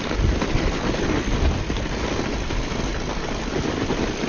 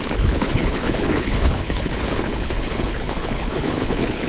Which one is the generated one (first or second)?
second